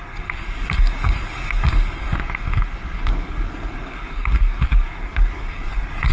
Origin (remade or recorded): remade